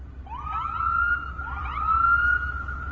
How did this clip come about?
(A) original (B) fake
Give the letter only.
A